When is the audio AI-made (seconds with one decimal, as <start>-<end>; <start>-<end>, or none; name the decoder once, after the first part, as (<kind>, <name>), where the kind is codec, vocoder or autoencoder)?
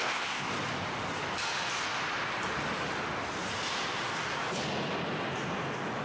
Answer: 0.0-0.5 (codec, ZipCodec)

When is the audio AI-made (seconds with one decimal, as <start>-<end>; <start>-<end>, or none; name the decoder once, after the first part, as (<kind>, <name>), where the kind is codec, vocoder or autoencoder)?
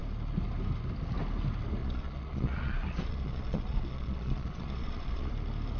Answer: 1.8-5.3 (vocoder, Vocos)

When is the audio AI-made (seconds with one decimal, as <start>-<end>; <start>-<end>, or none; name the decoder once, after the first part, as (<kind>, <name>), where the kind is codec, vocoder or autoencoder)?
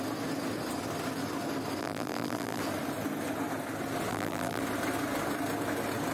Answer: 1.8-2.6 (vocoder, BigVGAN v2); 4.1-4.6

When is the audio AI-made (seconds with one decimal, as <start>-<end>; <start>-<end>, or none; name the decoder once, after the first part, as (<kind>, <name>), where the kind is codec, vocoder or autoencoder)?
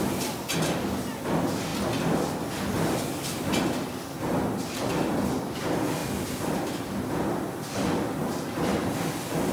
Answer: 6.0-6.8 (vocoder, BigVGAN v2); 8.7-9.5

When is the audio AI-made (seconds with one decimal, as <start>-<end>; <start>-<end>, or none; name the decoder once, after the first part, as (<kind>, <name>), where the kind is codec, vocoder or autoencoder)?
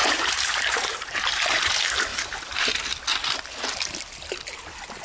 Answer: 0.0-1.7 (vocoder, BigVGAN v2); 2.1-2.8